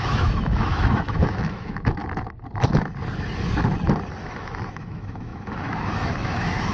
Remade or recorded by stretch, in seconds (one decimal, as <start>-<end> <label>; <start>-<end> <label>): 0.0-2.0 remade; 2.0-4.2 recorded; 4.2-6.7 remade